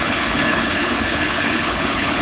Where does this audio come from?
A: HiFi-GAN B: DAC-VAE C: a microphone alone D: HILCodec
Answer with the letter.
D